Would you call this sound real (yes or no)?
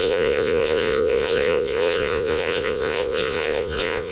no